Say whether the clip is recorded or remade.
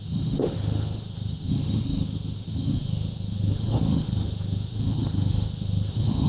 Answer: remade